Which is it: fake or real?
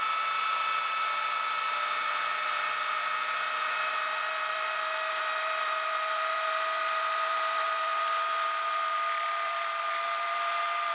real